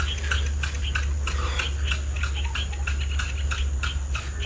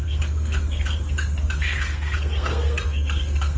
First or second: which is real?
first